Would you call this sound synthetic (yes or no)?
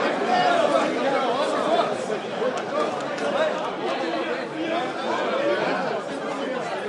no